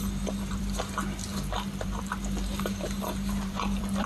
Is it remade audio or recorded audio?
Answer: remade